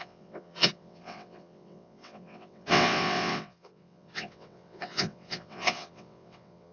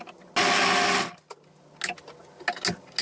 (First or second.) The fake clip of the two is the first